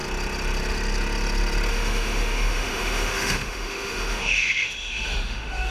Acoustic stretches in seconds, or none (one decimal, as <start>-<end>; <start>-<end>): 0.0-1.7